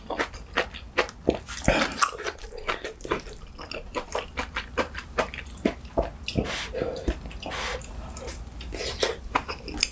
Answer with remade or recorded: recorded